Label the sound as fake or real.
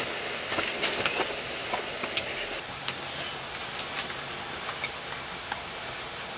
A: real